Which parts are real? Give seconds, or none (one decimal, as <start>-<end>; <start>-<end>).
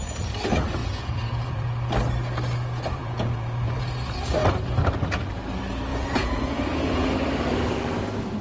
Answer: 0.0-0.8; 1.7-3.0; 3.8-5.9; 7.1-8.4